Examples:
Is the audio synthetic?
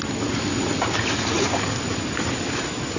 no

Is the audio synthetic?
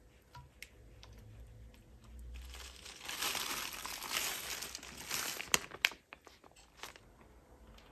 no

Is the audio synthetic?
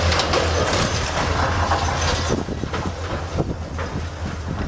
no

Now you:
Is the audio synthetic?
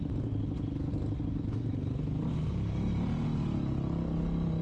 no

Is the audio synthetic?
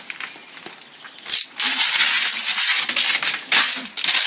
no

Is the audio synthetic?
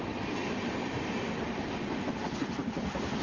no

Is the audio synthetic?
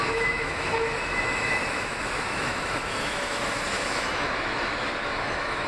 yes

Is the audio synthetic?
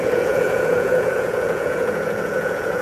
yes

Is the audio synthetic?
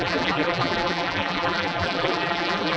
yes